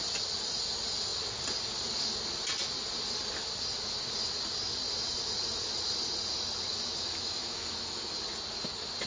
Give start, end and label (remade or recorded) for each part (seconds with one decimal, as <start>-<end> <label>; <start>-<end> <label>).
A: 0.0-6.7 recorded; 6.7-8.1 remade; 8.1-9.1 recorded